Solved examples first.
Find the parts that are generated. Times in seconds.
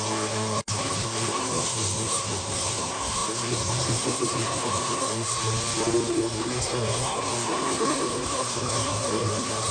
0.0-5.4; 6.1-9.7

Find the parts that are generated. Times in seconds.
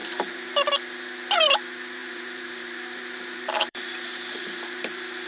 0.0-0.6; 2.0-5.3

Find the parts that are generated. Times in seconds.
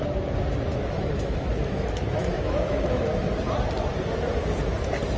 0.7-3.2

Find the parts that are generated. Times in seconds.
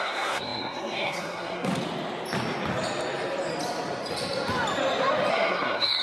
0.0-1.7; 5.3-6.0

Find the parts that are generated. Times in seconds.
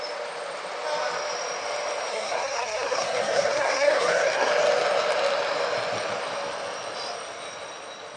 2.1-4.5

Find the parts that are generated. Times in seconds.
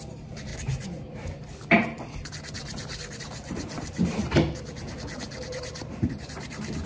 0.0-0.5; 3.2-4.2; 5.4-6.9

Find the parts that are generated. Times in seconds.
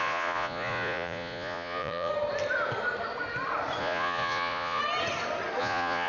0.0-2.1; 3.8-4.8; 5.6-6.1